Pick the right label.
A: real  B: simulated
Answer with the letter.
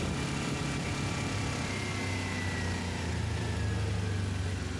A